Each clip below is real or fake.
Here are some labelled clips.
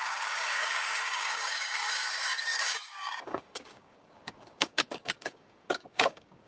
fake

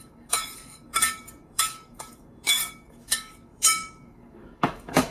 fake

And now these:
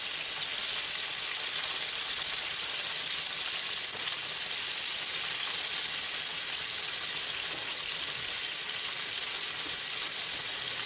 real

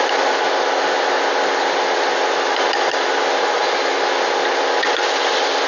real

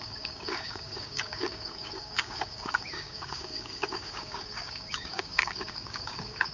fake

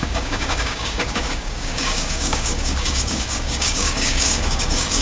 fake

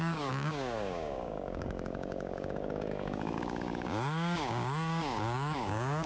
fake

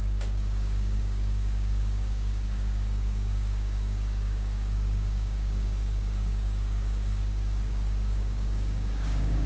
fake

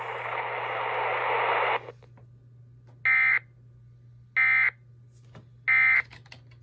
real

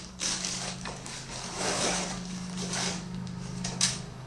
fake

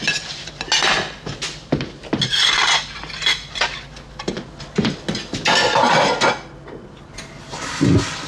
real